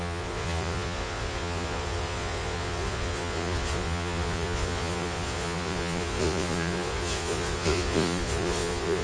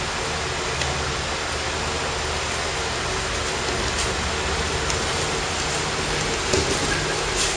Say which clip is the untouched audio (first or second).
second